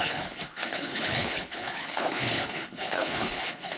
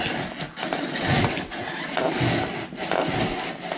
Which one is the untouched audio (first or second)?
second